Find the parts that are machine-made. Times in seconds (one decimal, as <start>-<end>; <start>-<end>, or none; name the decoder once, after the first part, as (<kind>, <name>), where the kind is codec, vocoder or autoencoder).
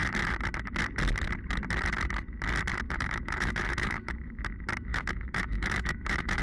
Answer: 2.7-4.4 (autoencoder, DAC-VAE); 4.9-6.4